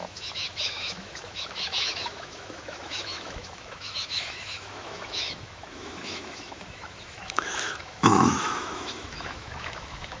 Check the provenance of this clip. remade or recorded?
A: remade